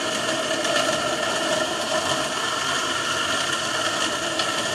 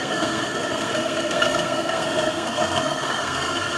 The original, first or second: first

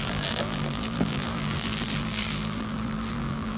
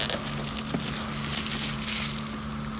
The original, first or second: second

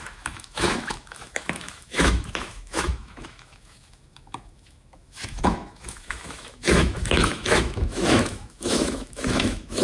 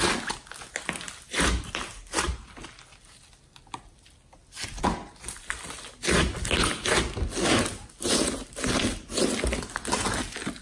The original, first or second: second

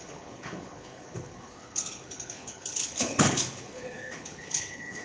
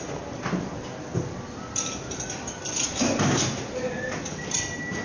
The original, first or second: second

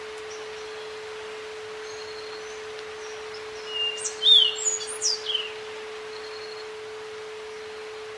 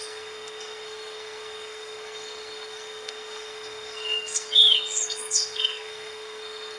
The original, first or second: first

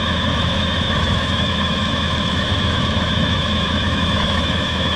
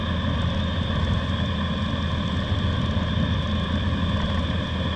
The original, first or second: second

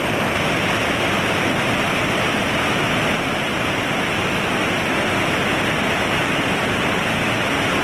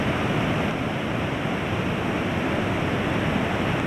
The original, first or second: first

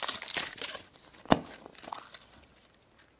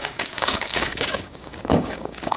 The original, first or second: first